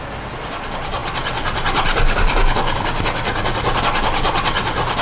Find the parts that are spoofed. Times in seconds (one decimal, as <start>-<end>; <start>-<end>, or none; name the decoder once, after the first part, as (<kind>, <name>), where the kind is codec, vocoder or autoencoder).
none